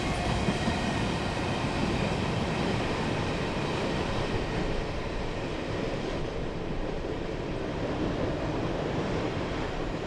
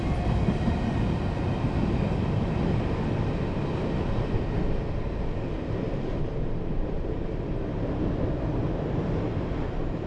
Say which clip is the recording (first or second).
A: second